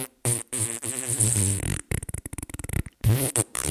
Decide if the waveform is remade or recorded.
remade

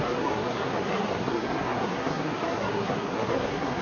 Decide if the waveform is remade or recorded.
remade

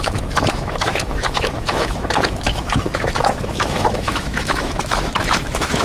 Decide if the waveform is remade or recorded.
remade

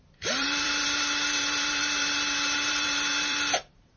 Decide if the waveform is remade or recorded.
remade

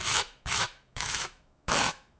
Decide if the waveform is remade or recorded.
remade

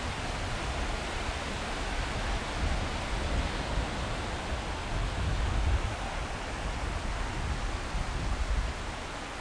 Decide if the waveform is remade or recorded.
recorded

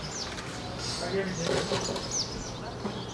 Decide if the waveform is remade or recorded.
recorded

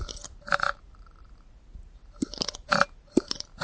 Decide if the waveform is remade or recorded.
recorded